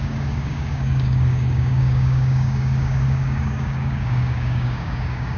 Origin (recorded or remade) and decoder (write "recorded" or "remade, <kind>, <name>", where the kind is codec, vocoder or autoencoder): remade, codec, DAC